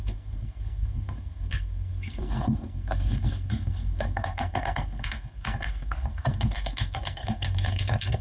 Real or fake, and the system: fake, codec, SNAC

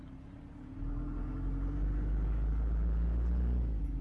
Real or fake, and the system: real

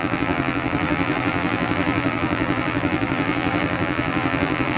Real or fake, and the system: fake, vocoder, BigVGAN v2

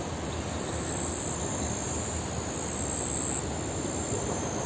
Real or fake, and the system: real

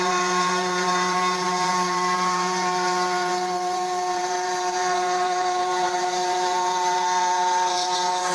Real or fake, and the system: fake, vocoder, BigVGAN v2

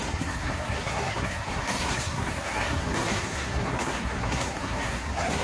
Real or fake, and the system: fake, codec, SNAC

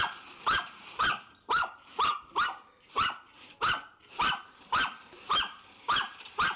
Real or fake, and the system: fake, vocoder, BigVGAN v2